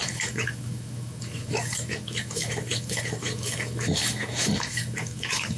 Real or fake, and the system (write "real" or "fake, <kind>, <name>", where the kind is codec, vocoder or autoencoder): fake, autoencoder, DAC-VAE